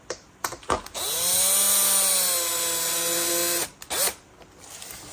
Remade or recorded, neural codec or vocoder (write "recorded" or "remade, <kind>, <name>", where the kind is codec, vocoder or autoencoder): recorded